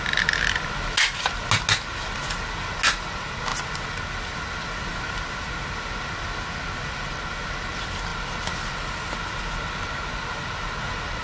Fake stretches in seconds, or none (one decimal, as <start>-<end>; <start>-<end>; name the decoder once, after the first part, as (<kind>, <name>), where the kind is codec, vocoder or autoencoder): none